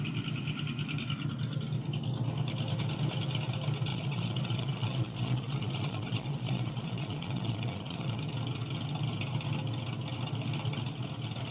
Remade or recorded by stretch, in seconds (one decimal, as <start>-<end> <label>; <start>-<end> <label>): 0.0-3.9 recorded; 3.9-8.2 remade; 8.2-11.5 recorded